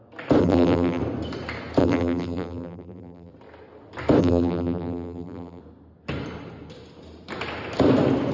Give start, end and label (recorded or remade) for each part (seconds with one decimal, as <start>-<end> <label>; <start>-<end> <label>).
0.0-0.4 recorded; 0.4-1.0 remade; 1.0-1.8 recorded; 1.8-3.3 remade; 3.3-4.2 recorded; 4.2-5.6 remade; 5.6-8.3 recorded

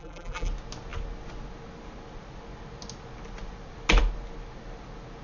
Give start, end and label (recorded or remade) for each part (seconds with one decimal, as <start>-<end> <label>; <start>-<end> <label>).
0.0-0.5 remade; 0.5-5.2 recorded

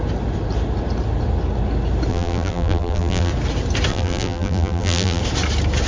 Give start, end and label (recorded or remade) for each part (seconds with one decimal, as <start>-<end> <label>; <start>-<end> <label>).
0.0-2.1 recorded; 2.1-3.3 remade; 3.3-3.9 recorded; 3.9-5.2 remade; 5.2-5.9 recorded

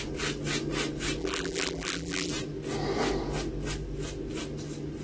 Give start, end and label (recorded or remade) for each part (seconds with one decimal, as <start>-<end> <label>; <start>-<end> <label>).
0.0-1.2 recorded; 1.2-2.3 remade; 2.3-5.0 recorded

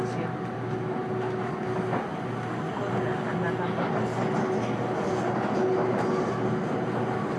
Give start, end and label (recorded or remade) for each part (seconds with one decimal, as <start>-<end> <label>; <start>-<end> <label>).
0.0-7.4 recorded

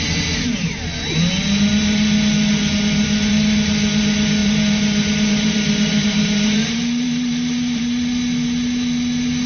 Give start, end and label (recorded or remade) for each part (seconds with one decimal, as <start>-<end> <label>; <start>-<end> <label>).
0.0-4.4 recorded; 4.4-7.8 remade; 7.8-9.5 recorded